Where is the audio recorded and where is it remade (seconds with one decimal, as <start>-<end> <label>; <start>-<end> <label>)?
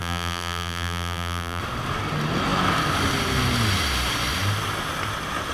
0.0-1.6 remade; 1.6-5.5 recorded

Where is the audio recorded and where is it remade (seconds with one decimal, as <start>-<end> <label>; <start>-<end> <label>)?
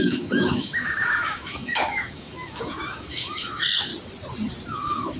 0.0-3.9 remade; 3.9-4.7 recorded; 4.7-5.2 remade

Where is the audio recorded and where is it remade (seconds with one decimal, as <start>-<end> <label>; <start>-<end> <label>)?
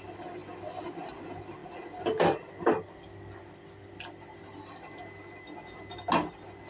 0.0-6.7 recorded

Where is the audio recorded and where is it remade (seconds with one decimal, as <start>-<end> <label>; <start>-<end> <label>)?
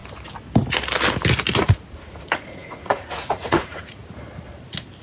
0.0-2.0 recorded; 2.0-4.0 remade; 4.0-5.0 recorded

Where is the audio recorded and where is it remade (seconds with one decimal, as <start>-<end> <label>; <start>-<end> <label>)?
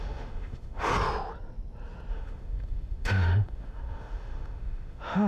0.0-0.9 remade; 0.9-2.1 recorded; 2.1-5.3 remade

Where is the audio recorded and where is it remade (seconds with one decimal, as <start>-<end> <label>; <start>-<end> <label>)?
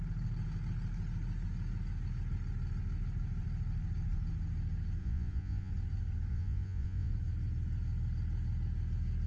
0.0-5.0 recorded; 5.0-5.7 remade; 5.7-6.3 recorded; 6.3-7.1 remade; 7.1-9.3 recorded